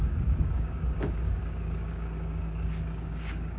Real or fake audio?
fake